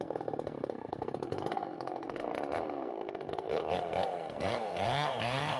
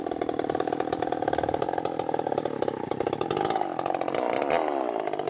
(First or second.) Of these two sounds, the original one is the second